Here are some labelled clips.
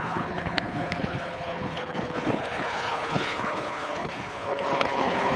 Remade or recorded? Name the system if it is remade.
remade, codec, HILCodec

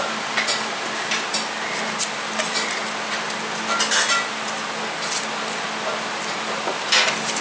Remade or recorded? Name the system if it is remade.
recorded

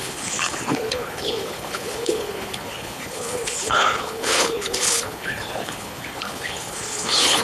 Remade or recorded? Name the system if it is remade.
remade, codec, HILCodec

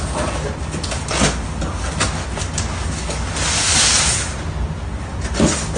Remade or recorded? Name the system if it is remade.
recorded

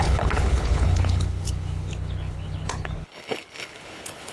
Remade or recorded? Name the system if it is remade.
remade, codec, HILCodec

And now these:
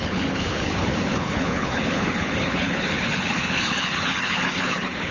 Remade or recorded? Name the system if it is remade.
remade, codec, HILCodec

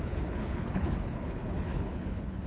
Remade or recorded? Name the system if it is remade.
remade, codec, HILCodec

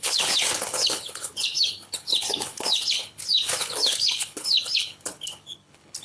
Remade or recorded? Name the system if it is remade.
remade, codec, HILCodec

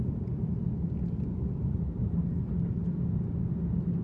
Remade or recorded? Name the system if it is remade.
recorded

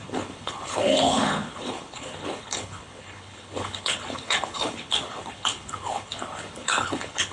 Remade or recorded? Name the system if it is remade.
remade, codec, HILCodec